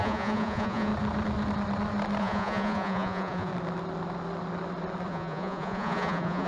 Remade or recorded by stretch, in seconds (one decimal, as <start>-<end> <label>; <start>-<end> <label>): 0.0-0.9 remade; 0.9-2.2 recorded; 2.2-3.5 remade; 3.5-5.1 recorded; 5.1-6.5 remade